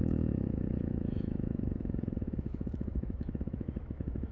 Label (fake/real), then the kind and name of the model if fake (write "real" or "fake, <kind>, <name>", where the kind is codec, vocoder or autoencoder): fake, autoencoder, DAC-VAE